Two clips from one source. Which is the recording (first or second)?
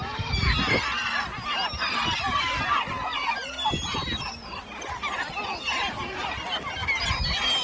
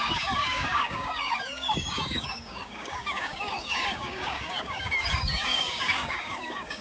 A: first